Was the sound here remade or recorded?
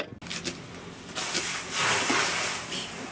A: recorded